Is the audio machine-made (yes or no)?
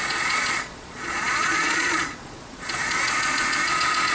yes